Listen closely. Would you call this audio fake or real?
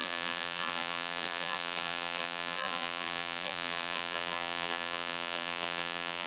fake